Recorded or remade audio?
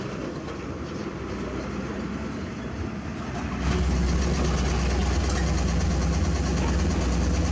recorded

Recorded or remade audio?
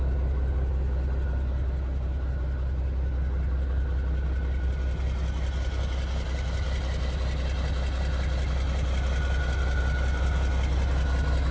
recorded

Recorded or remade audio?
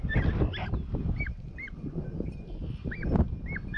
recorded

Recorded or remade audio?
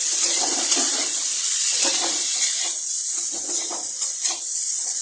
remade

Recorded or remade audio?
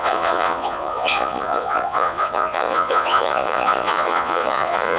remade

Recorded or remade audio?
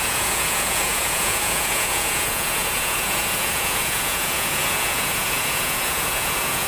remade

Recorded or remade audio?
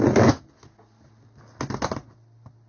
recorded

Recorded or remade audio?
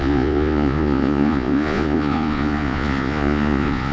remade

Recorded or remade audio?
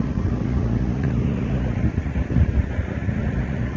remade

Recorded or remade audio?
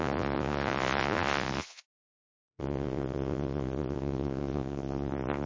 remade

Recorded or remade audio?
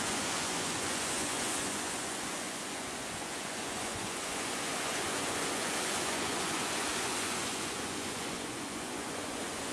remade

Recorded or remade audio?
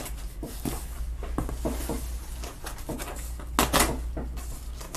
recorded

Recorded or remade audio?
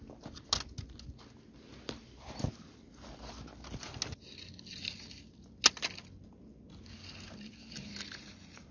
recorded